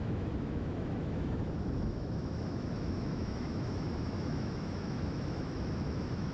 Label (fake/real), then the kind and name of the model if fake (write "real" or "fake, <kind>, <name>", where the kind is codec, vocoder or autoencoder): fake, autoencoder, DAC-VAE